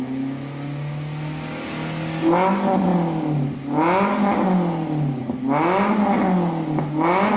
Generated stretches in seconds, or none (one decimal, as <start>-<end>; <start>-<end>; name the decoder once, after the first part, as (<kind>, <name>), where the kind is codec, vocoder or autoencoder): none